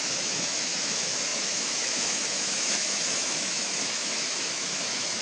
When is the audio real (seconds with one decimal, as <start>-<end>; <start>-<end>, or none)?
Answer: none